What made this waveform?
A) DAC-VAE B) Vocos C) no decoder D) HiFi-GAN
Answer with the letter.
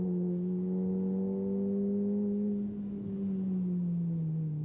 C